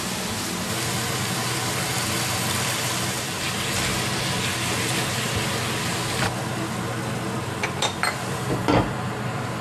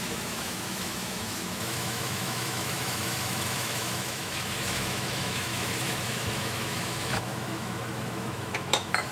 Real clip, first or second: first